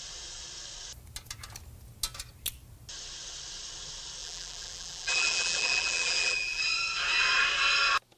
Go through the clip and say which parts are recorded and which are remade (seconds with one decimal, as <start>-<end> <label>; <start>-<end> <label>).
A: 0.0-4.2 recorded; 4.2-6.6 remade; 6.6-8.2 recorded